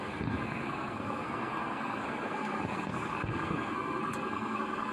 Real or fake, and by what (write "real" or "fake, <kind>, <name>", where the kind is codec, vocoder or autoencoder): fake, codec, SNAC